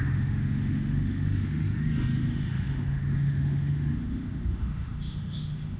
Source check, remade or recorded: remade